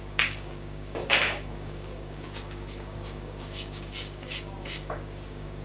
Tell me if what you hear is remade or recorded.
remade